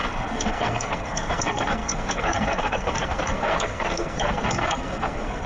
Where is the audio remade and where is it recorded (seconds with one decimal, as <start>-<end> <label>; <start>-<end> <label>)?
0.0-5.5 remade

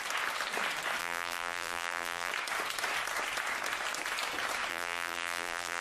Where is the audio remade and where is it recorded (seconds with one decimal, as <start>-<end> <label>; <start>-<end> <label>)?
0.0-1.0 recorded; 1.0-2.3 remade; 2.3-4.7 recorded; 4.7-5.8 remade

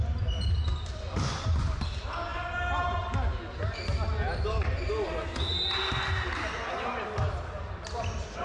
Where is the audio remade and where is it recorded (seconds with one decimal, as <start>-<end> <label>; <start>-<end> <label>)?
0.0-8.4 recorded

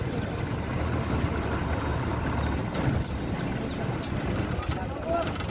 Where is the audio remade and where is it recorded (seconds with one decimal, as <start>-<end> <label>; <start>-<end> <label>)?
0.0-5.5 recorded

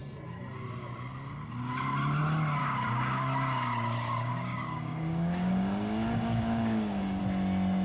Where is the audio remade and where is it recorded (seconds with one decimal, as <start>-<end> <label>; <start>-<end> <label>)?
0.0-2.6 recorded; 2.6-7.2 remade; 7.2-7.8 recorded

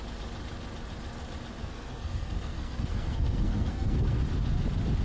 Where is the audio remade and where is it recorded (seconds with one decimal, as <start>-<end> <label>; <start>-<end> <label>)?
0.0-1.6 recorded; 1.6-4.2 remade; 4.2-5.0 recorded

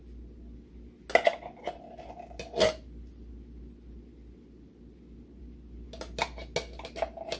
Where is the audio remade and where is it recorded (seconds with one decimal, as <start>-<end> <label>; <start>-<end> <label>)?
0.0-7.4 recorded

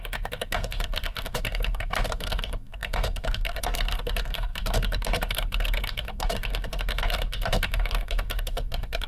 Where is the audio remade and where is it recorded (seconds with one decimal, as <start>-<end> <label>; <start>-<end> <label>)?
0.0-9.1 remade